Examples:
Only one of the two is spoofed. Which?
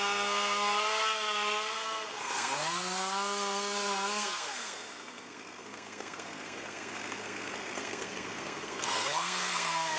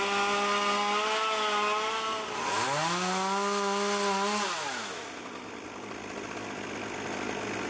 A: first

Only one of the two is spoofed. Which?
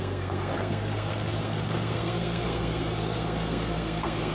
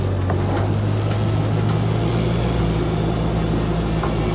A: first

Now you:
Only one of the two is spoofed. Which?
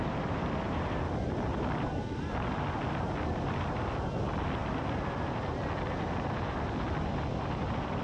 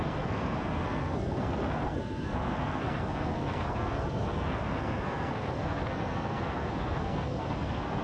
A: second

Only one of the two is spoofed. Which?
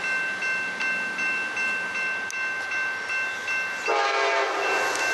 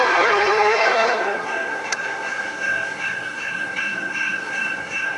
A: second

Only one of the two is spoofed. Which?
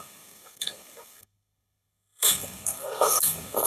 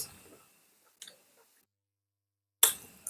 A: first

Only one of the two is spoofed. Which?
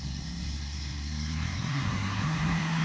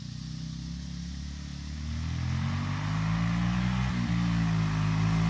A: first